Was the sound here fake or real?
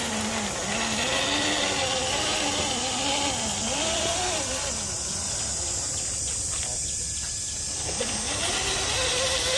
real